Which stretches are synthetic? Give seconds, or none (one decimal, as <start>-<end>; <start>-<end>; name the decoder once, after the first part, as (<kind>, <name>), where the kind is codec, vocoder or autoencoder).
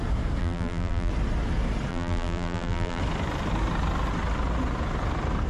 0.4-1.1 (vocoder, BigVGAN v2); 1.9-3.0